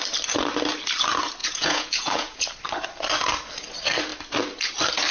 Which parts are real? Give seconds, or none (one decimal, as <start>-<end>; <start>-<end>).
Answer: 0.0-1.4; 2.4-5.1